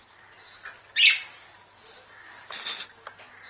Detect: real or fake real